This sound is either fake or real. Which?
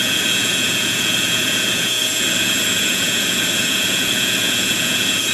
fake